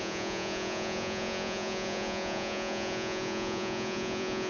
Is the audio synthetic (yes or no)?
yes